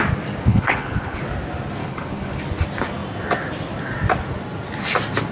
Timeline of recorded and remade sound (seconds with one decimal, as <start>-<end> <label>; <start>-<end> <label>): 0.0-0.5 recorded; 0.5-1.2 remade; 1.2-1.8 recorded; 1.8-2.4 remade; 2.4-5.3 recorded